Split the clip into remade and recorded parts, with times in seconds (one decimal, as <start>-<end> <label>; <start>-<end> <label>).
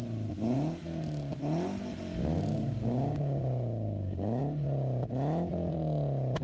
0.0-2.5 recorded; 2.5-4.4 remade; 4.4-6.4 recorded